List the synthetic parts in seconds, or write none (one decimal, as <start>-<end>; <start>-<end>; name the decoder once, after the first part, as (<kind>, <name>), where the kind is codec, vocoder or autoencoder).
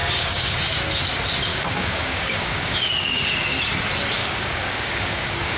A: 0.0-0.6 (codec, DAC); 1.5-3.3; 4.2-5.6